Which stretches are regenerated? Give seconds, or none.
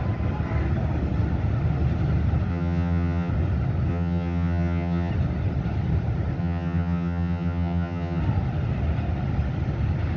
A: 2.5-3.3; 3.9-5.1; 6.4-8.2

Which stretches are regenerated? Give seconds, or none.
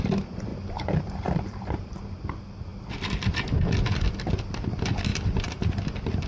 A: 0.5-1.9; 5.1-5.7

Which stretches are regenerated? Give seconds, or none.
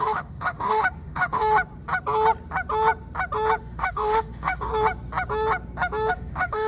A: 0.0-1.4; 3.6-4.7; 6.1-6.7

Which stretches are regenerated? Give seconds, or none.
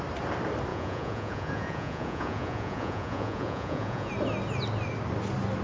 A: 0.7-4.1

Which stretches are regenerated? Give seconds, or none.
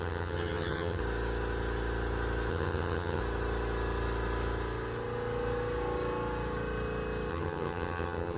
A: 0.0-1.0; 2.5-3.2; 7.3-8.4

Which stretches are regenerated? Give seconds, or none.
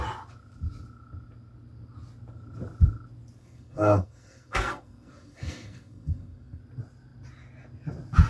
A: 3.4-6.6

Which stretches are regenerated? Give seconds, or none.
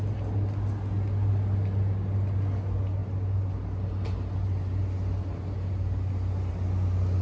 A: none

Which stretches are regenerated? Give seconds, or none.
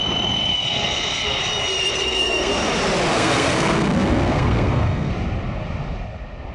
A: 0.5-1.4; 1.9-2.5; 3.1-5.1